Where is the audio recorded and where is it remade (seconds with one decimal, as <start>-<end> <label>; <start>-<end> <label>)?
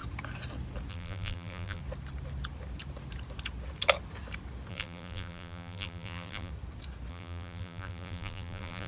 0.0-0.9 recorded; 0.9-1.8 remade; 1.8-4.7 recorded; 4.7-6.5 remade; 6.5-7.1 recorded; 7.1-8.9 remade